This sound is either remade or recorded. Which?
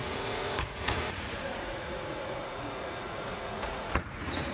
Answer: remade